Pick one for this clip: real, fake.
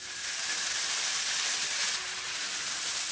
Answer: real